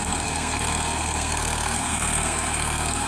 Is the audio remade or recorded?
remade